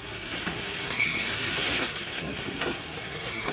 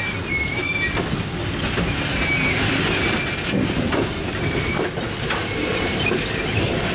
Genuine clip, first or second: second